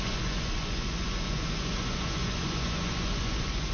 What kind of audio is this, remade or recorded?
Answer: remade